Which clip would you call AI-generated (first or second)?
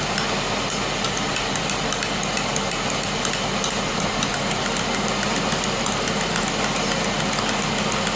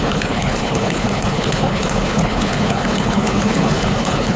second